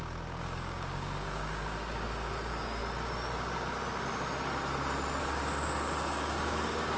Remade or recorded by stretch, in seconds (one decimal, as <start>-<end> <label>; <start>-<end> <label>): 0.0-2.8 remade; 2.8-5.2 recorded; 5.2-7.0 remade